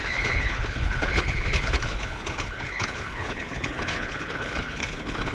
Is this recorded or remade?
remade